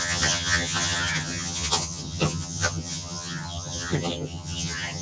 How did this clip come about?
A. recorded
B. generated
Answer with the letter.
B